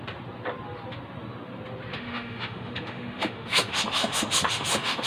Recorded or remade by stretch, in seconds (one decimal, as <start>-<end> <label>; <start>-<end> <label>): 0.0-1.9 recorded; 1.9-5.1 remade